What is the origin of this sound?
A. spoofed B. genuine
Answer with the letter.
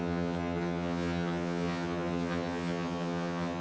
A